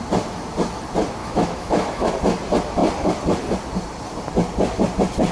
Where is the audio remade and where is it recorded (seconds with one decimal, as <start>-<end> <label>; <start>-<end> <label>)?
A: 0.0-1.2 recorded; 1.2-2.1 remade; 2.1-5.3 recorded